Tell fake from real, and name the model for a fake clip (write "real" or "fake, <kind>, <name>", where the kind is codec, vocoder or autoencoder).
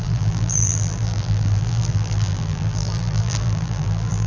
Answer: fake, vocoder, BigVGAN v2